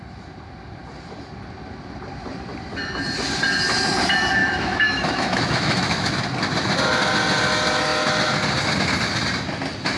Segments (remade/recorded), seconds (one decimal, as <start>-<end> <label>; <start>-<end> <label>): 0.0-4.4 recorded; 4.4-6.2 remade; 6.2-10.0 recorded